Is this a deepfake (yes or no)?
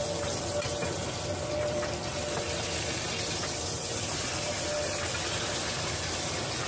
no